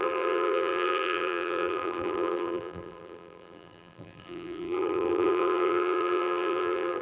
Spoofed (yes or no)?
yes